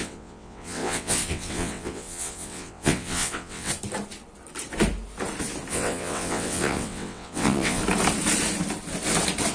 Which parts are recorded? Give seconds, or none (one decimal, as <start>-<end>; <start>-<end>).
3.7-5.7; 7.8-9.5